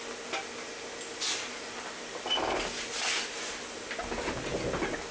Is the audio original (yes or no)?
yes